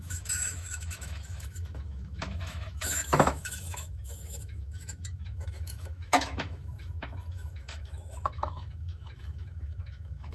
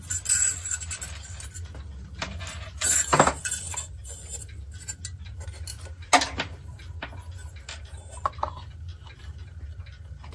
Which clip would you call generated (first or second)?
first